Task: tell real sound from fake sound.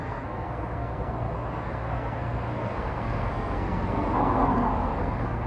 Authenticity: fake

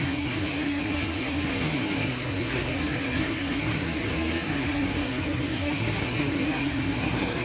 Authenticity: fake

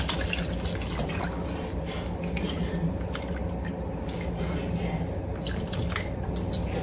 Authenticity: real